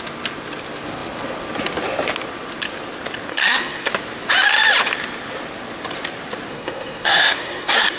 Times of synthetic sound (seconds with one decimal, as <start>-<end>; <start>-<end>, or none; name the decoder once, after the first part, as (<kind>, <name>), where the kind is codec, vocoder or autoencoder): 3.3-3.9 (codec, SNAC); 6.5-8.0